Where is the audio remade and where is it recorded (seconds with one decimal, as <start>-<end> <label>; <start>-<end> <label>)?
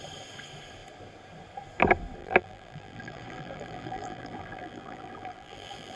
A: 0.0-2.2 recorded; 2.2-6.0 remade